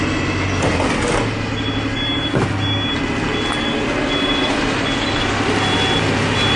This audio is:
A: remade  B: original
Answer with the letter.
B